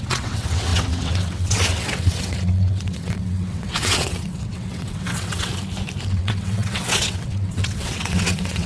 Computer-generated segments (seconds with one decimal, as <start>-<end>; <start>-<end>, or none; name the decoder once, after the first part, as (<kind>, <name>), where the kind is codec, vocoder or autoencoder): 0.0-5.5 (vocoder, WaveNeXt); 6.1-8.7